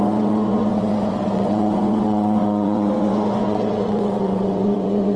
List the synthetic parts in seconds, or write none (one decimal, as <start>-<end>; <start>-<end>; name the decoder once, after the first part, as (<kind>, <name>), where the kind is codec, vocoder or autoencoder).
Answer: 0.0-5.2 (vocoder, WaveNeXt)